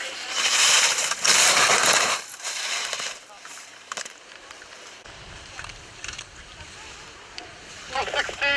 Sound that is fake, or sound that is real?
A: fake